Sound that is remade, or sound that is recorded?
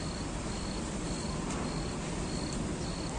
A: recorded